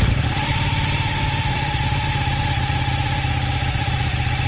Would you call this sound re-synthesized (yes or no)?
yes